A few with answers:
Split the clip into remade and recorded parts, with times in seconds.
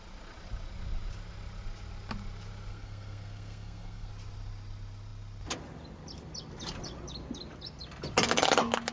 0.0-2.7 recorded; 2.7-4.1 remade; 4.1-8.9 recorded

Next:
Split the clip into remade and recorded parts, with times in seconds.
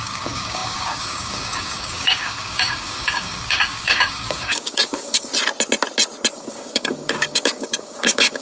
0.0-5.3 remade; 5.3-6.3 recorded; 6.3-8.4 remade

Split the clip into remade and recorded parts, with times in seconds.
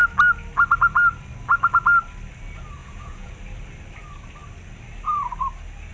0.0-2.8 recorded; 2.8-3.3 remade; 3.3-5.9 recorded